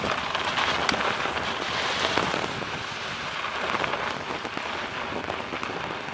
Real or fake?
real